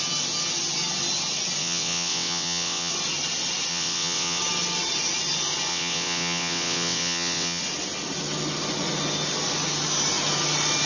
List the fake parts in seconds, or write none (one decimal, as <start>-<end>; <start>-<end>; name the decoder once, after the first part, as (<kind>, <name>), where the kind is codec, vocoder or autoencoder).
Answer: 1.6-2.9 (vocoder, WaveNeXt); 3.7-4.4; 5.7-7.6